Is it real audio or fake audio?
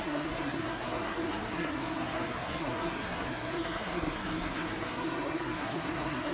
fake